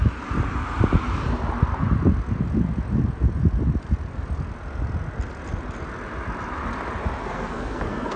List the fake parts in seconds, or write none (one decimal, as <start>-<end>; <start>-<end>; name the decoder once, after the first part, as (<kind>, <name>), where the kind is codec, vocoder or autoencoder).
7.2-8.2 (codec, SNAC)